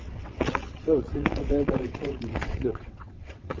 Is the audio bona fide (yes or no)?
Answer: no